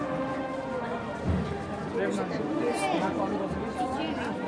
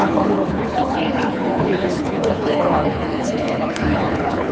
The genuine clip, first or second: first